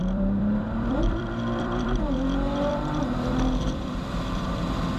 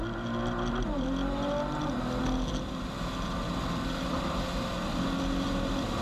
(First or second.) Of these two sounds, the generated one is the first